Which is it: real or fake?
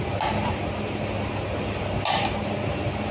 real